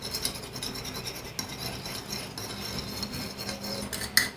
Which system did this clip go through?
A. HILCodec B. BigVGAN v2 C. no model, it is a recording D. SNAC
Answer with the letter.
C